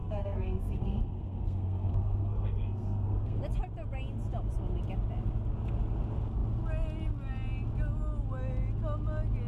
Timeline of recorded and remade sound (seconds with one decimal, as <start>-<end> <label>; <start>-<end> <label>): 0.0-3.4 remade; 3.4-9.5 recorded